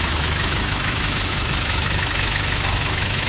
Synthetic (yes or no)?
yes